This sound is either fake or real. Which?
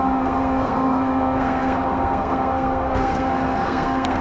fake